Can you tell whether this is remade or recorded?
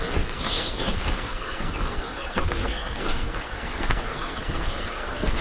remade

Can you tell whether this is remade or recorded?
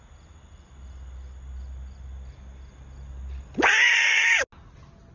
recorded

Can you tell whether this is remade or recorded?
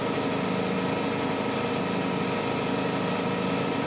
recorded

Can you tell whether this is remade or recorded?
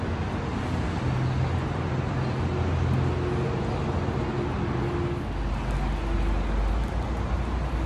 recorded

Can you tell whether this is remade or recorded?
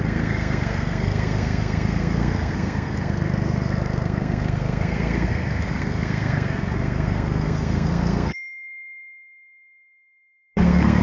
remade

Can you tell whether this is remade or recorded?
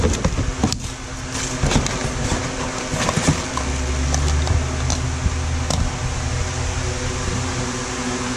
recorded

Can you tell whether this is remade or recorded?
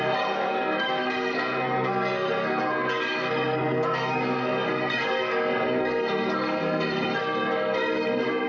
remade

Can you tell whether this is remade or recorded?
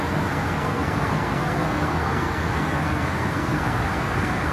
remade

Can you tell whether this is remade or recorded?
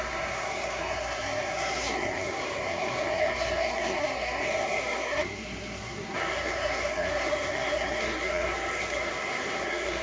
remade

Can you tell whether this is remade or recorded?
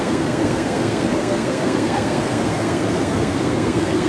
remade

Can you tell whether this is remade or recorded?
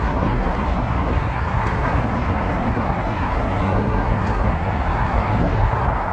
remade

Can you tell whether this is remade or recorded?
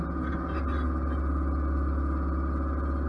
recorded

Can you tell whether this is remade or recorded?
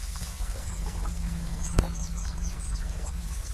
remade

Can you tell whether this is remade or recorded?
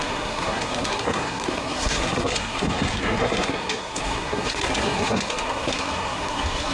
remade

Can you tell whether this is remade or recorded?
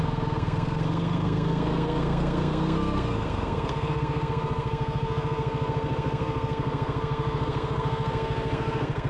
remade